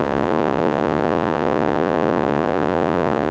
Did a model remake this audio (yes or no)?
yes